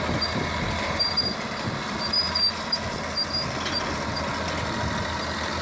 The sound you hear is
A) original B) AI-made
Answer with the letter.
A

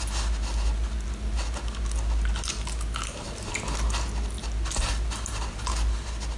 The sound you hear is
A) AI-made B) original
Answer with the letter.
B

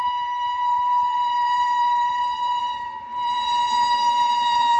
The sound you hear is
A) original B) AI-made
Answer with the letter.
B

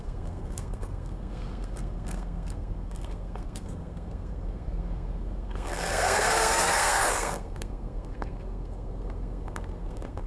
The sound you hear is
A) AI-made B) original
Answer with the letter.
A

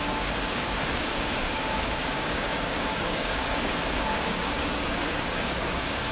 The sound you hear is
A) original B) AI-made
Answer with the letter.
B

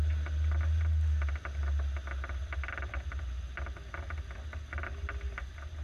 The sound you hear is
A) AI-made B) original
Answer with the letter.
B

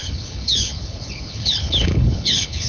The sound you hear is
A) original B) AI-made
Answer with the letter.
B